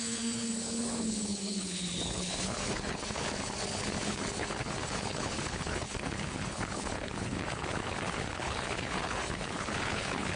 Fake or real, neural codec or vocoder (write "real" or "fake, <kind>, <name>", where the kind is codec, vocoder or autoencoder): fake, codec, HILCodec